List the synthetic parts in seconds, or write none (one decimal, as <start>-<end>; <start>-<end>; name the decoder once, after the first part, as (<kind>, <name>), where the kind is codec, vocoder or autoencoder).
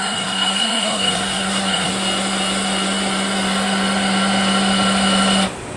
0.0-1.9 (codec, SNAC)